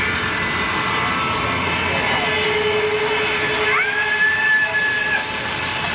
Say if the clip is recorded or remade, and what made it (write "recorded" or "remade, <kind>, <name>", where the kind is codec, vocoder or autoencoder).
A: recorded